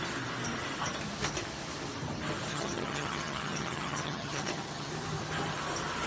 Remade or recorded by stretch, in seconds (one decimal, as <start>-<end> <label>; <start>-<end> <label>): 0.0-2.5 recorded; 2.5-4.9 remade; 4.9-6.1 recorded